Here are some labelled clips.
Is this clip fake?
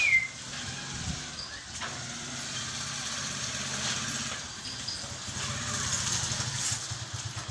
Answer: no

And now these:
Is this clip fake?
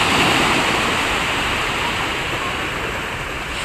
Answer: yes